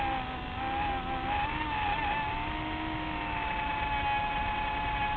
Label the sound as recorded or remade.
recorded